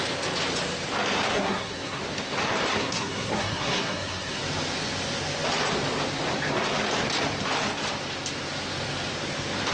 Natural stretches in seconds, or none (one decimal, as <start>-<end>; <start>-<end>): 0.0-1.3; 2.0-2.8; 4.4-9.7